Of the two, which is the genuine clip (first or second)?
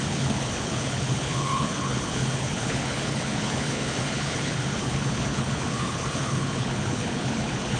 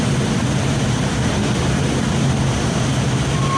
second